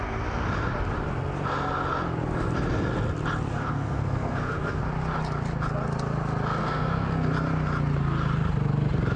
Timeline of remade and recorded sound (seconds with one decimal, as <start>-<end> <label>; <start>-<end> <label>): 0.0-3.5 recorded; 3.5-4.8 remade; 4.8-6.6 recorded; 6.6-7.3 remade; 7.3-9.2 recorded